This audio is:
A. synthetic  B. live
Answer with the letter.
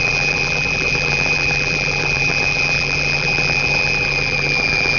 A